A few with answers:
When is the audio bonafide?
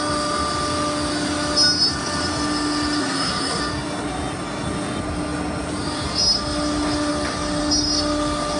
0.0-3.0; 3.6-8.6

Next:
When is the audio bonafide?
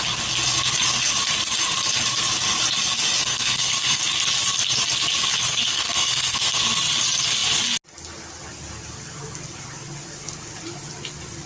0.0-3.2; 4.0-5.5; 6.6-11.5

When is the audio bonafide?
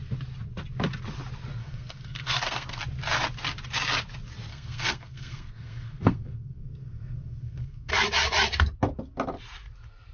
0.0-1.6; 2.8-4.5; 7.9-10.1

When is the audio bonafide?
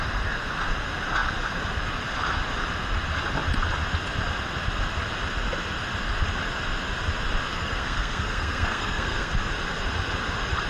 0.0-7.5; 9.3-10.7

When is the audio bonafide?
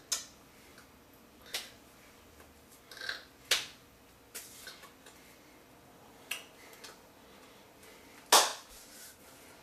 0.0-9.6